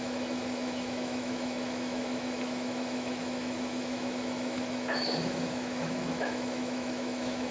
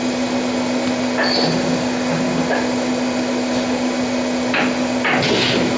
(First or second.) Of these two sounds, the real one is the second